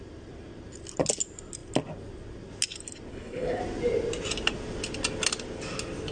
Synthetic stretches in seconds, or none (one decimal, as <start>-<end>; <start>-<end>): 3.1-3.6